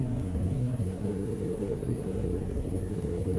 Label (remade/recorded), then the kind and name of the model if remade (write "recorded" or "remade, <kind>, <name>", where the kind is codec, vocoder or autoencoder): remade, codec, SNAC